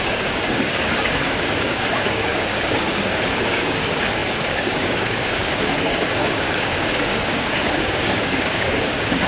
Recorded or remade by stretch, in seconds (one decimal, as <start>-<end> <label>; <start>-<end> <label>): 0.0-9.3 remade